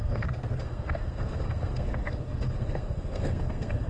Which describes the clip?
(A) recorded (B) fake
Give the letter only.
B